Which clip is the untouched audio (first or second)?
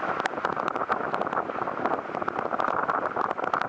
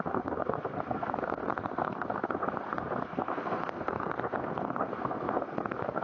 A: first